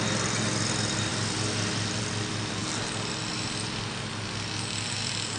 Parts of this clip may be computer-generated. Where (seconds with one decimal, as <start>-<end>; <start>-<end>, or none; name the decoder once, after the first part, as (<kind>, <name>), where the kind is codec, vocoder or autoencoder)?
none